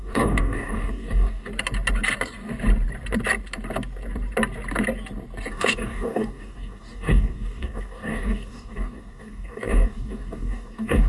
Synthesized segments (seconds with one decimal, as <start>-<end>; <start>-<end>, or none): 0.0-1.5; 5.5-11.1

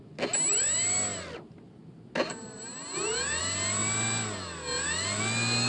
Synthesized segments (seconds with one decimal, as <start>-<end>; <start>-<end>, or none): none

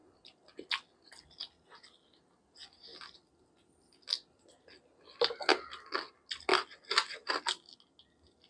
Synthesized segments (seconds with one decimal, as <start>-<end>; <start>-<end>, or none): none

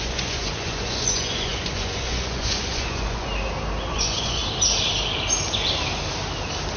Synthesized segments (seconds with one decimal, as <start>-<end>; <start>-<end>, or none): 0.0-3.3; 3.9-4.4

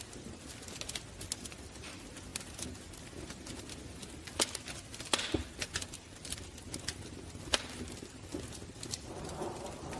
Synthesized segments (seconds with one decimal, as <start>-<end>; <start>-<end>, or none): none